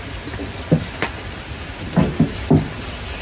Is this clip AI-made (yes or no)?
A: no